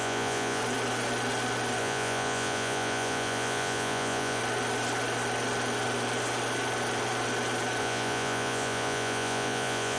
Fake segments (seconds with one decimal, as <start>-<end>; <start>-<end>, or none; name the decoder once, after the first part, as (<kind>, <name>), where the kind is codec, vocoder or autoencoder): 0.0-0.6 (vocoder, Vocos); 1.8-4.4; 7.8-10.0